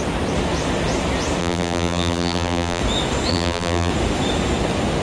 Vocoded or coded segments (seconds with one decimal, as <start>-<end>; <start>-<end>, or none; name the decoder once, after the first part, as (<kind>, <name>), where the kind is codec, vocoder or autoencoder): 1.4-2.8 (vocoder, BigVGAN v2); 3.3-3.9